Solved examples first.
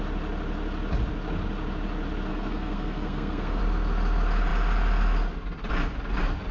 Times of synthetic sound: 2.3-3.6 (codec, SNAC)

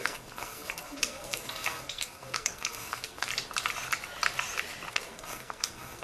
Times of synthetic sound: 0.0-3.3 (codec, SNAC); 4.9-6.0

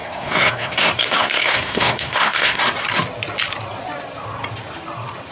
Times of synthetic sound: 0.0-2.6 (codec, SNAC)

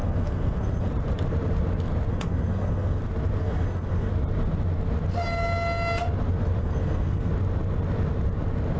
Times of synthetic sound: 0.0-0.9 (codec, SNAC); 2.1-3.0; 3.4-4.1; 6.6-7.3

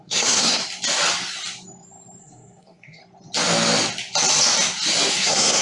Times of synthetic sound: 0.0-0.6 (codec, SNAC); 2.2-3.0; 5.1-5.6

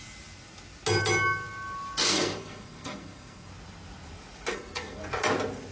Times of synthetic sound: 2.1-3.5 (codec, SNAC); 4.5-5.0

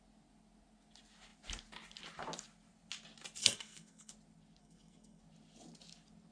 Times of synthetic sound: 3.4-4.1 (codec, SNAC); 4.6-5.2